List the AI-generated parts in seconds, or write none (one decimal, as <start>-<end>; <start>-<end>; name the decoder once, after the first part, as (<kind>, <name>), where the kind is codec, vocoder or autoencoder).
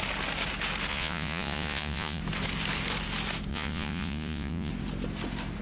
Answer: 0.9-2.2 (vocoder, Vocos); 3.5-4.7